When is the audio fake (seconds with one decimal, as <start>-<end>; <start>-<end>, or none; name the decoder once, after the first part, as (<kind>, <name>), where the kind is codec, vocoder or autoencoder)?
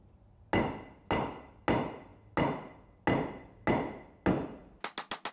none